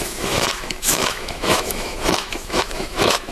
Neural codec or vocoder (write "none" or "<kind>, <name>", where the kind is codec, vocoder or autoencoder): autoencoder, DAC-VAE